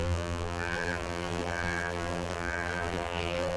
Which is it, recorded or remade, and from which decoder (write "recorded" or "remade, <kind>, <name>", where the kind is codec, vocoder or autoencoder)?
remade, vocoder, BigVGAN v2